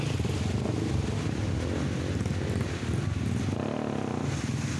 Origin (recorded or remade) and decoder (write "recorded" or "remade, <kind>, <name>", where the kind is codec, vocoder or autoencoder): recorded